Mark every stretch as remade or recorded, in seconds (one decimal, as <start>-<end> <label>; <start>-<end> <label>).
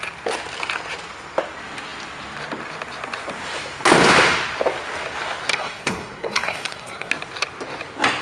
0.0-5.5 recorded; 5.5-7.1 remade; 7.1-8.2 recorded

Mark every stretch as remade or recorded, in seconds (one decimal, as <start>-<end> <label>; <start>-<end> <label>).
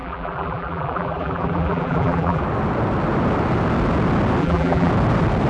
0.0-2.4 remade; 2.4-4.4 recorded; 4.4-4.9 remade; 4.9-5.5 recorded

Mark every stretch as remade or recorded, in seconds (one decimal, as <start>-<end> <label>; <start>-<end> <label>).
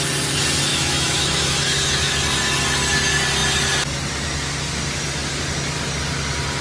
0.0-0.7 recorded; 0.7-2.1 remade; 2.1-6.6 recorded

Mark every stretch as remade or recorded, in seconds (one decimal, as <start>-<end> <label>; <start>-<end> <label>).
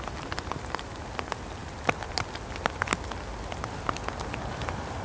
0.0-5.0 recorded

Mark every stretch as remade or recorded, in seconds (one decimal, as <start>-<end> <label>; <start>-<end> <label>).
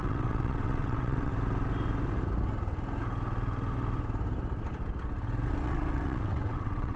0.0-1.3 remade; 1.3-5.5 recorded; 5.5-7.0 remade